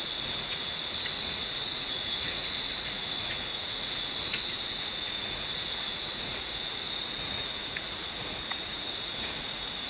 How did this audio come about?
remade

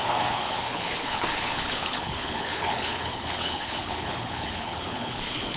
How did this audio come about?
remade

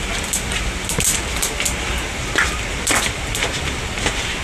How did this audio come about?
recorded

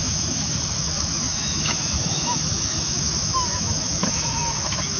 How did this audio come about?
remade